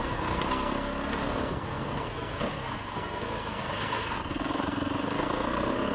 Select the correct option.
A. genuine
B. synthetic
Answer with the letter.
B